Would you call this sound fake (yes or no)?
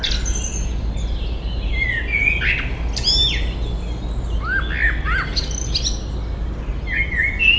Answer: no